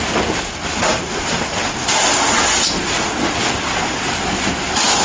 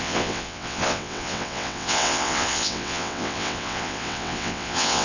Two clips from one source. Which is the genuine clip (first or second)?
first